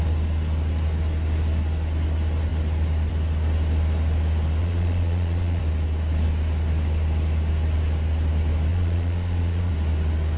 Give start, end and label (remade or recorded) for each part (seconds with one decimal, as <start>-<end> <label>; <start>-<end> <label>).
0.0-4.6 recorded; 4.6-5.6 remade; 5.6-8.7 recorded; 8.7-9.7 remade; 9.7-10.4 recorded